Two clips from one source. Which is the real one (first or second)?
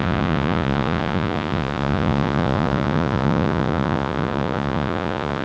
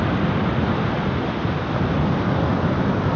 second